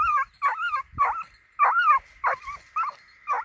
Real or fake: real